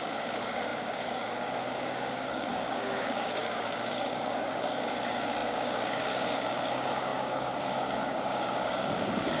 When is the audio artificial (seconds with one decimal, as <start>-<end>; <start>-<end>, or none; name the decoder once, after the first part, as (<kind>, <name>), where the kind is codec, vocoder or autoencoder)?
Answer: 0.0-9.4 (codec, DAC)